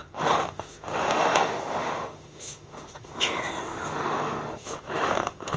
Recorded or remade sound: remade